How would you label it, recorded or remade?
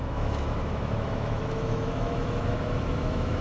remade